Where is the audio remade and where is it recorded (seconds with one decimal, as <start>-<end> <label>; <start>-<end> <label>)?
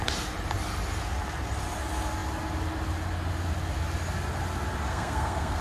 0.0-4.9 recorded; 4.9-5.6 remade